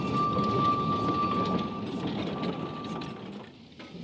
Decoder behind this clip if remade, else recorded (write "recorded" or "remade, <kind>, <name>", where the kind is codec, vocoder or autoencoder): recorded